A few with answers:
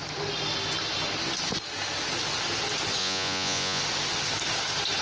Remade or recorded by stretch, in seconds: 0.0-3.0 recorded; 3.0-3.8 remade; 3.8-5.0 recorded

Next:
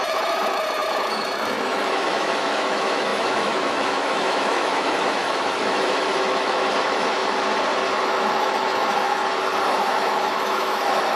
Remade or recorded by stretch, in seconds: 0.0-7.2 remade; 7.2-8.0 recorded; 8.0-9.2 remade; 9.2-9.8 recorded; 9.8-11.2 remade

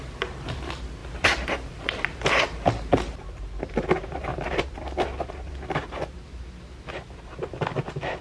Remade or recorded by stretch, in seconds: 0.0-1.0 recorded; 1.0-2.3 remade; 2.3-4.3 recorded; 4.3-5.5 remade; 5.5-8.2 recorded

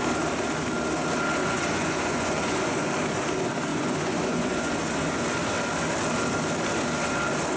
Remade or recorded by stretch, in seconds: 0.0-1.4 recorded; 1.4-2.9 remade; 2.9-3.7 recorded; 3.7-4.7 remade; 4.7-7.6 recorded

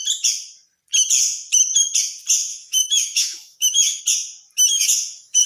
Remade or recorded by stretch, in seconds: 0.0-2.5 recorded; 2.5-4.0 remade; 4.0-4.7 recorded; 4.7-5.5 remade

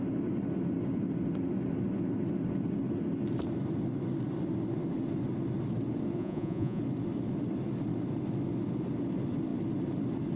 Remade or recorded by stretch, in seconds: 0.0-6.2 recorded; 6.2-6.8 remade; 6.8-10.4 recorded

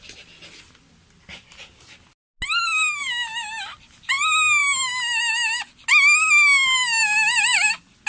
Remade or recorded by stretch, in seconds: 0.0-8.1 recorded

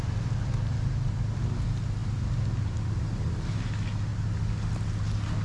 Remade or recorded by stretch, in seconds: 0.0-5.4 recorded